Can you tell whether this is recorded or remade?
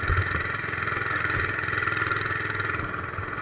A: recorded